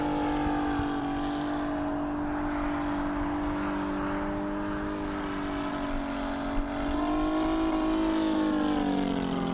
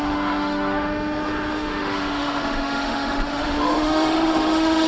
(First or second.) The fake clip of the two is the second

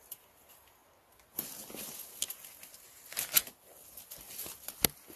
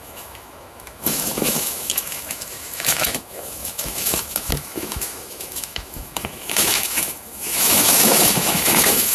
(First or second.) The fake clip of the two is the second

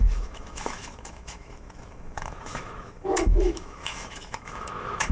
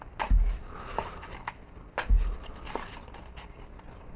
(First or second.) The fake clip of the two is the first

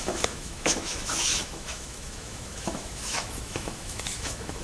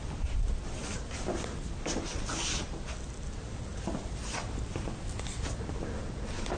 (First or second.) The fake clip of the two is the first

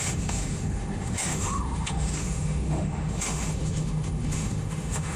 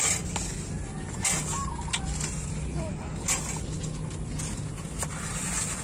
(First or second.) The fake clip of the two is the first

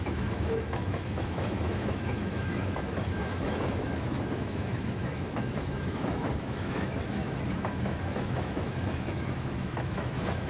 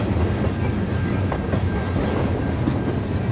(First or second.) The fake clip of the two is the first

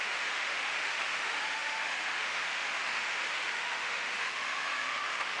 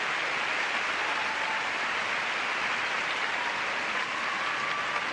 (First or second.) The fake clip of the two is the first